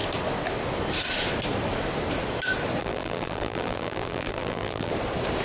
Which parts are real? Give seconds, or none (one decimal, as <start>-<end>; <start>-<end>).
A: 0.0-2.8; 4.9-5.4